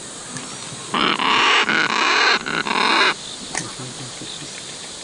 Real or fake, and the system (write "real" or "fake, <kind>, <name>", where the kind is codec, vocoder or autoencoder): real